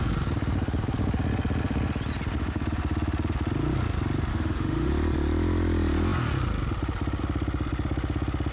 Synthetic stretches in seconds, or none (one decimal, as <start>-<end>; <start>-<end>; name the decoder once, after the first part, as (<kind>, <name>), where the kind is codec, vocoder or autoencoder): 4.3-4.9 (autoencoder, DAC-VAE)